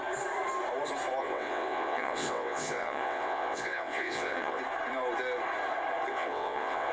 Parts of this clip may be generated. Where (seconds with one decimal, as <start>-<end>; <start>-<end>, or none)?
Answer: 1.2-4.6; 6.1-6.9

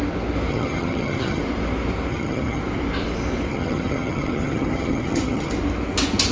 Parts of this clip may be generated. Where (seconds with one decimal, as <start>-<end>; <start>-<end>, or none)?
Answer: 0.5-1.4; 2.1-2.6; 3.5-5.5

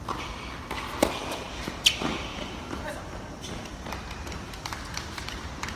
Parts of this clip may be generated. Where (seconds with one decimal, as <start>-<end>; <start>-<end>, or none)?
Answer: 1.2-1.7; 2.3-5.8